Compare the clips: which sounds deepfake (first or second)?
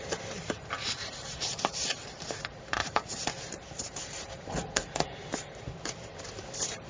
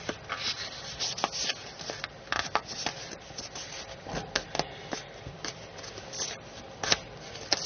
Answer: first